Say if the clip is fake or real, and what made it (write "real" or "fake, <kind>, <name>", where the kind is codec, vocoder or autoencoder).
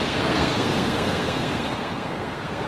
fake, codec, SNAC